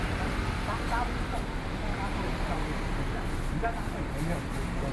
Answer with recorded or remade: recorded